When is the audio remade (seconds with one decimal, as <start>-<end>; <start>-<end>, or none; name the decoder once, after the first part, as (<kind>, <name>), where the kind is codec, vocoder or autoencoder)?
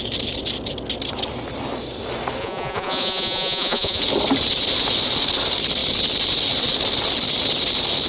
2.4-4.0 (vocoder, Vocos)